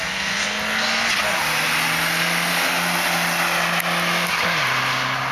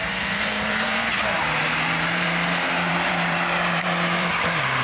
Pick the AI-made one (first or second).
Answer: second